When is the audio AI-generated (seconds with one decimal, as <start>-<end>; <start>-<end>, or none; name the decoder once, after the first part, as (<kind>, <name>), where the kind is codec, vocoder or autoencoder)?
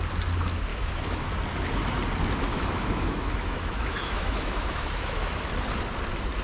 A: 0.7-1.3 (autoencoder, DAC-VAE); 2.5-5.5